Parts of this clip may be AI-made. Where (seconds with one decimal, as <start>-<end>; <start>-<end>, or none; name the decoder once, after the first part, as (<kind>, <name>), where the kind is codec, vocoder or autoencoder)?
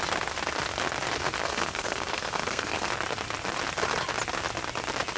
1.4-2.9 (codec, SNAC)